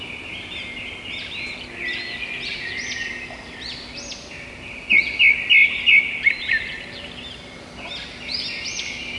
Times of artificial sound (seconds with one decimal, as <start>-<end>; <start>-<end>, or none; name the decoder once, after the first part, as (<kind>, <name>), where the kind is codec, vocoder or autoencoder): 4.1-5.0 (vocoder, BigVGAN v2)